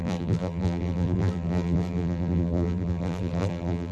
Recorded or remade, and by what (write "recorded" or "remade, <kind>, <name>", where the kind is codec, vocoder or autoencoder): remade, vocoder, BigVGAN v2